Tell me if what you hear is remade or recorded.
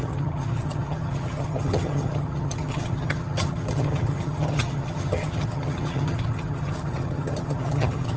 remade